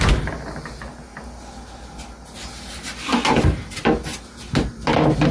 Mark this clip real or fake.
real